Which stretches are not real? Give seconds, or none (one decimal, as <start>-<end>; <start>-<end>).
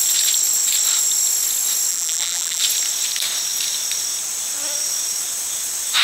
1.9-2.6